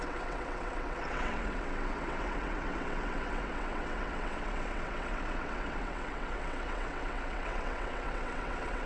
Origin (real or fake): fake